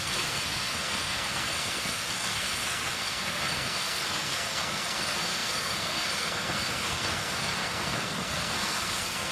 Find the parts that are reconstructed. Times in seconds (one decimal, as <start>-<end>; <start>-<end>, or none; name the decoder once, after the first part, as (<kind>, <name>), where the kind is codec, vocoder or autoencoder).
0.0-9.3 (codec, SNAC)